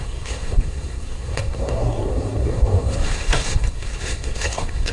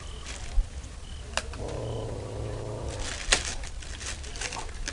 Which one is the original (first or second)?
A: second